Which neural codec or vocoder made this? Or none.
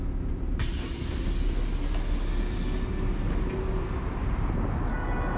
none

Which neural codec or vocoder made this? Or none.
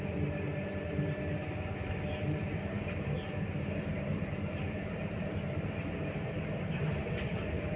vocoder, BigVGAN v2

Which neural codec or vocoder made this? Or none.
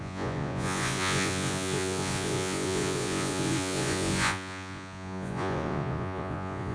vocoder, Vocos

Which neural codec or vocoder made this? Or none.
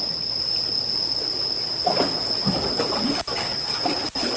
none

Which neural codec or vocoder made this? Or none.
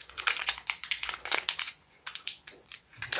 vocoder, Vocos